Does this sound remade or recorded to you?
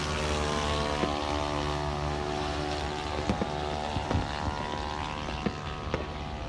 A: recorded